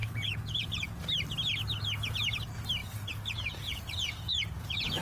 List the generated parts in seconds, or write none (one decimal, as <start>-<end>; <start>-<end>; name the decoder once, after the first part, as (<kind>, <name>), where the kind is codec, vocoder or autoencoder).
0.0-1.0 (vocoder, Vocos); 2.8-5.0

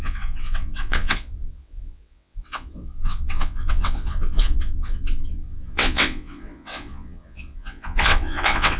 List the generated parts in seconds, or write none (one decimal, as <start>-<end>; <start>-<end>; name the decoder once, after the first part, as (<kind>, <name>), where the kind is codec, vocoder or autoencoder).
0.0-8.8 (vocoder, WaveNeXt)

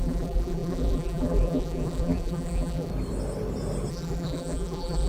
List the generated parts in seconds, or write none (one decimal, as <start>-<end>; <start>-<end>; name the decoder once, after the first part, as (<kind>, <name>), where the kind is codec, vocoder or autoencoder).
0.0-2.9 (vocoder, BigVGAN v2); 3.9-5.1

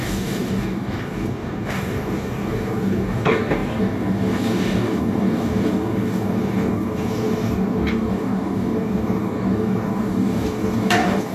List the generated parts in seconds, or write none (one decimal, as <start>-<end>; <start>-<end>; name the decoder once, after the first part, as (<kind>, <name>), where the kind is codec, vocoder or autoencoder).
0.0-11.3 (codec, DAC)

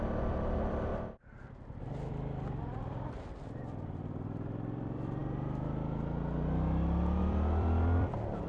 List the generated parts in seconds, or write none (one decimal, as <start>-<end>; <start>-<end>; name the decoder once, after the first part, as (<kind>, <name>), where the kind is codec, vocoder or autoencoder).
0.0-0.9 (vocoder, BigVGAN v2); 2.1-5.2; 7.2-8.5